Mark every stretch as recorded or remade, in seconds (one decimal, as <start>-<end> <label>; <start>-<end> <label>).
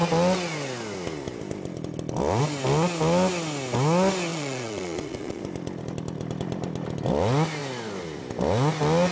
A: 0.0-4.3 recorded; 4.3-5.4 remade; 5.4-9.1 recorded